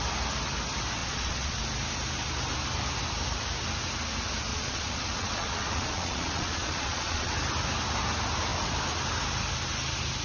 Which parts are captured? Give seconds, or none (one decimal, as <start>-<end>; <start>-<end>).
0.0-1.0; 1.6-4.5; 7.3-10.2